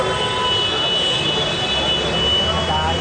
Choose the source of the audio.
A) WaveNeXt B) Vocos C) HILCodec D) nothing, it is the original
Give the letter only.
D